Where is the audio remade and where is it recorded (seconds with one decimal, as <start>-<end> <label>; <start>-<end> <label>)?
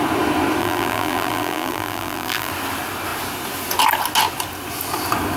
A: 0.0-0.6 recorded; 0.6-2.5 remade; 2.5-5.4 recorded